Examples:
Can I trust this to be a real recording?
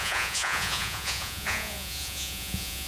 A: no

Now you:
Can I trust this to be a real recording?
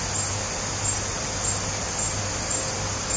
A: yes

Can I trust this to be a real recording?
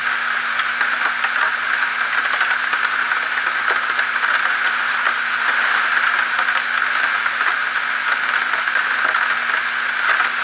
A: yes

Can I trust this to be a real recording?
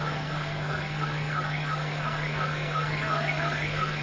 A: no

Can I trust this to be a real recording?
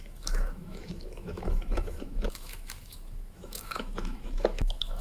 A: no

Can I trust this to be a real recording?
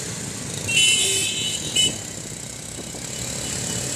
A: yes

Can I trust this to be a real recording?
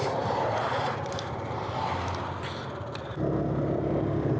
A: yes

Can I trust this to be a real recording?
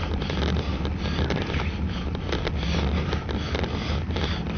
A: yes